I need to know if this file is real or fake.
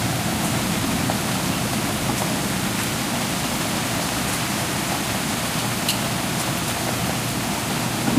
real